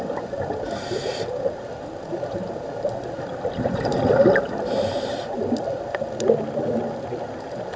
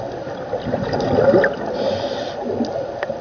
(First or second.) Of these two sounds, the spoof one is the first